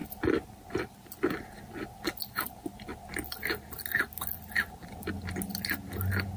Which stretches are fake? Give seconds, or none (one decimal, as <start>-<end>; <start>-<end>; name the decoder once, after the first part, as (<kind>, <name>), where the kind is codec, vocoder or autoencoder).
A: none